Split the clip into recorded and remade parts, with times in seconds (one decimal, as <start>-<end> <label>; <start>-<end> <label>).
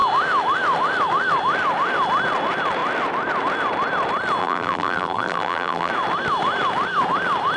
0.0-4.4 recorded; 4.4-5.9 remade; 5.9-7.6 recorded